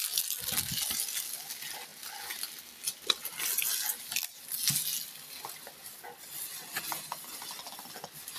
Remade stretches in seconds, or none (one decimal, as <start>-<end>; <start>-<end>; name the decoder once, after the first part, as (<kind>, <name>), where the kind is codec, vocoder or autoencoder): none